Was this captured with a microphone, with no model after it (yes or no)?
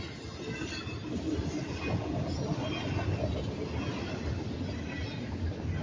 yes